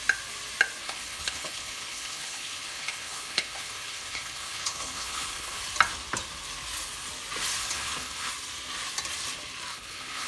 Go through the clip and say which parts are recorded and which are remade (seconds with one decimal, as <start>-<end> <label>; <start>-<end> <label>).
0.0-0.8 recorded; 0.8-5.6 remade; 5.6-7.6 recorded; 7.6-8.3 remade; 8.3-9.7 recorded; 9.7-10.3 remade